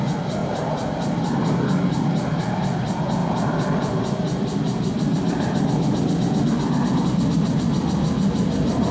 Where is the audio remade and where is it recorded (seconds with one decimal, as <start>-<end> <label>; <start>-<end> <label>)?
0.0-0.4 recorded; 0.4-1.4 remade; 1.4-8.9 recorded